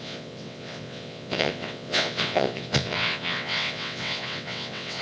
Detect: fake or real fake